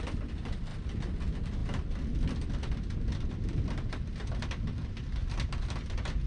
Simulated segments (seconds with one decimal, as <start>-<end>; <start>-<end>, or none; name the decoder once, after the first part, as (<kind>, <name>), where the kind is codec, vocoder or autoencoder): 0.0-0.7 (vocoder, BigVGAN v2); 1.2-1.6; 3.3-5.2